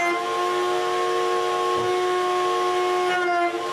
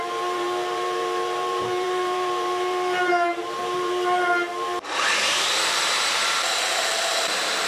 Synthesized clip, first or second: second